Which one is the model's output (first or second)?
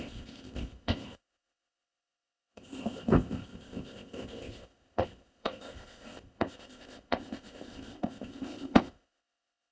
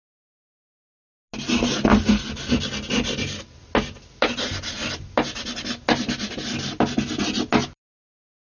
first